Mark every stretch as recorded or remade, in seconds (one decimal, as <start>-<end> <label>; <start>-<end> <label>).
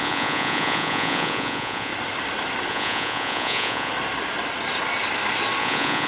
0.0-1.9 remade; 1.9-2.7 recorded; 2.7-3.9 remade; 3.9-5.6 recorded; 5.6-6.1 remade